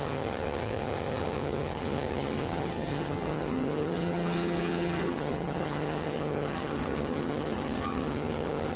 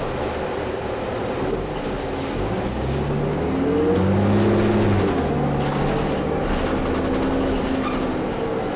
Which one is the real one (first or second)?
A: second